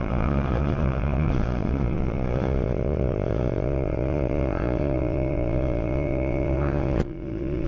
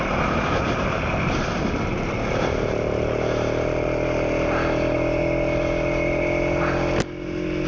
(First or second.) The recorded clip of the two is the second